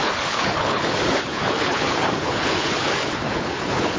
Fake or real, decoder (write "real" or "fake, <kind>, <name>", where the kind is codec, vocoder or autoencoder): fake, codec, HILCodec